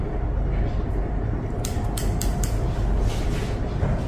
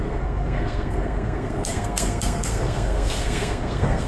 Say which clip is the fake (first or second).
second